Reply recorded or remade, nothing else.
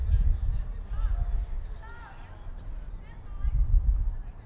recorded